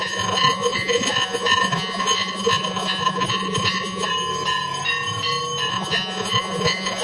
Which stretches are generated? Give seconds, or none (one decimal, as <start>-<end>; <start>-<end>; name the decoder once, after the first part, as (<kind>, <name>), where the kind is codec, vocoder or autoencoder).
0.0-4.1 (vocoder, Vocos); 5.7-7.0